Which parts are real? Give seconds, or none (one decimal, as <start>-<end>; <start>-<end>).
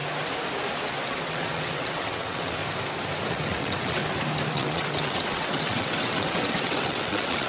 0.0-0.9; 2.6-3.3; 4.0-4.5